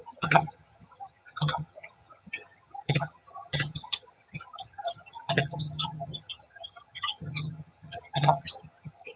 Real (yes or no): no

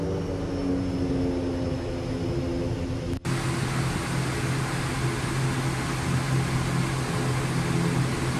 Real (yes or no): yes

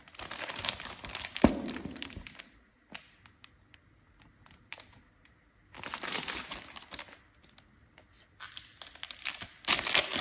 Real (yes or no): yes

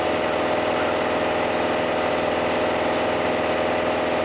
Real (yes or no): yes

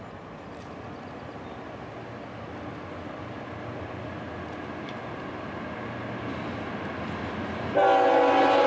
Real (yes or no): yes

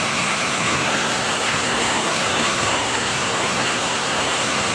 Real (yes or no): no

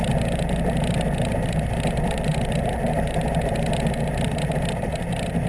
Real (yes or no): yes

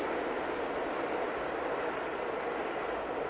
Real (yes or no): yes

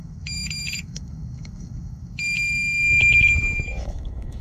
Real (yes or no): no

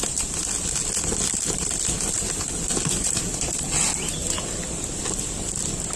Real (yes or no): yes